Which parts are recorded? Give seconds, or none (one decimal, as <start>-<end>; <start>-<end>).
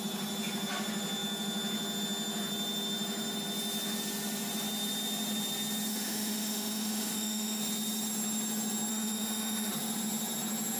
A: 0.0-5.9; 7.6-8.9; 9.7-10.8